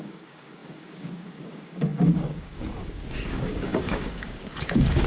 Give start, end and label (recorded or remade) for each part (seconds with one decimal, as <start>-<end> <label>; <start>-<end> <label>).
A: 0.0-5.1 remade